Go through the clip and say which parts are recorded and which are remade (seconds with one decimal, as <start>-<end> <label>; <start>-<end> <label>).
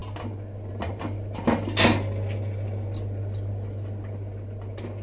0.0-5.0 recorded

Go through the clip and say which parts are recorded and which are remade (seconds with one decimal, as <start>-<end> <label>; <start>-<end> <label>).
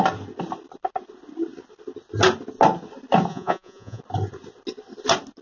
0.0-3.3 recorded; 3.3-4.0 remade; 4.0-5.4 recorded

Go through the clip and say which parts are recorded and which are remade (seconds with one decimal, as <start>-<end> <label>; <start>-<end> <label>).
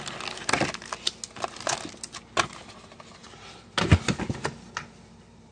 0.0-5.5 recorded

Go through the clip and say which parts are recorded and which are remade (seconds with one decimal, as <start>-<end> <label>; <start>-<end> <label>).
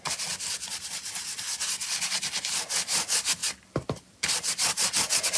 0.0-3.4 recorded; 3.4-4.5 remade; 4.5-5.4 recorded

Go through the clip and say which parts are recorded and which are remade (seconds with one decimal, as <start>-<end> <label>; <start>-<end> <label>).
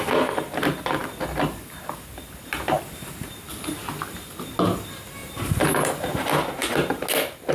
0.0-7.5 recorded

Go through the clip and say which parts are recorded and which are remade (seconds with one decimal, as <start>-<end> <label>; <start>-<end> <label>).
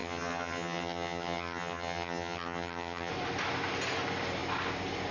0.0-3.1 remade; 3.1-5.1 recorded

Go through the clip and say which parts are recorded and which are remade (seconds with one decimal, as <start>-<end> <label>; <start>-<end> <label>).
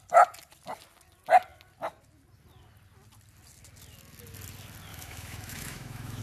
0.0-4.9 recorded; 4.9-6.2 remade